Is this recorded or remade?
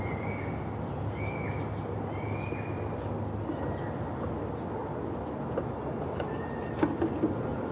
recorded